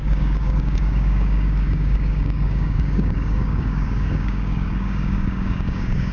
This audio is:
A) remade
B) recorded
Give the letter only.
A